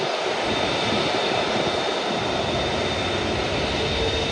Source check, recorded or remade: recorded